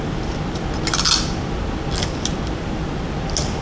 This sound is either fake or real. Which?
real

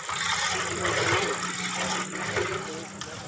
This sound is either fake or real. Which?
real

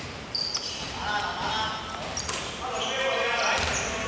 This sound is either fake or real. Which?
real